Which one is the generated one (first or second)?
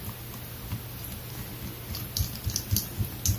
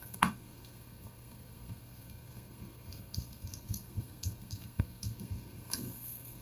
second